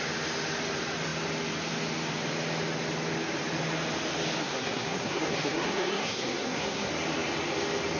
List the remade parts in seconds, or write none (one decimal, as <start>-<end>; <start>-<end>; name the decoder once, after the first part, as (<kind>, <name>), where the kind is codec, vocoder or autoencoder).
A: 4.4-6.9 (codec, SNAC)

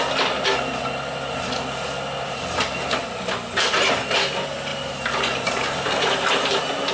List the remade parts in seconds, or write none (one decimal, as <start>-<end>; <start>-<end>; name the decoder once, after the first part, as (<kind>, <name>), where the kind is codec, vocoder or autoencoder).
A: none

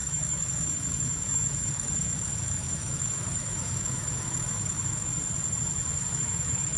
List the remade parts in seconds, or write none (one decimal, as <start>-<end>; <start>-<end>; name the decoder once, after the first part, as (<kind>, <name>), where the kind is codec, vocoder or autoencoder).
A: 0.0-5.1 (autoencoder, DAC-VAE); 6.1-6.8